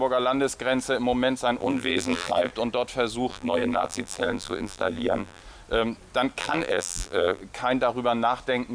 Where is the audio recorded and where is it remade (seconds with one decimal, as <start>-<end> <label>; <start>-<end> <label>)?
0.0-1.6 recorded; 1.6-2.5 remade; 2.5-3.3 recorded; 3.3-5.4 remade; 5.4-6.4 recorded; 6.4-7.4 remade; 7.4-8.7 recorded